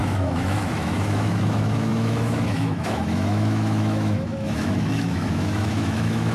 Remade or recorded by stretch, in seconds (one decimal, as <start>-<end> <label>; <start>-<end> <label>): 0.0-6.3 remade